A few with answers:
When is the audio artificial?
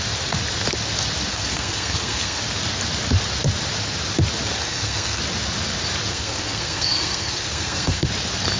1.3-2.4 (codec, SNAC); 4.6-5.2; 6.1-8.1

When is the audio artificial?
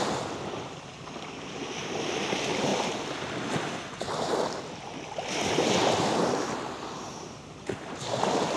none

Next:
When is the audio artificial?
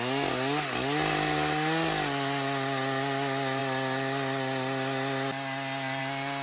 none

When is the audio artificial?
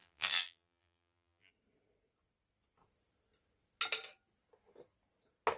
0.0-1.5 (vocoder, BigVGAN v2)